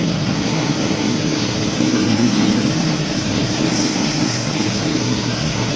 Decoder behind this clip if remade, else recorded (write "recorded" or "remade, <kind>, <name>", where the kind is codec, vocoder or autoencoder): remade, codec, SNAC